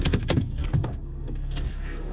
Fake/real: fake